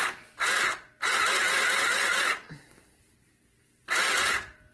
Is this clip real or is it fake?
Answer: real